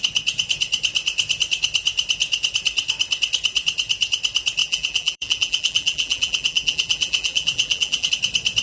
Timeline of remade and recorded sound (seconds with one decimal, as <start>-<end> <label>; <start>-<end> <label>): 0.0-4.6 recorded; 4.6-8.1 remade; 8.1-8.6 recorded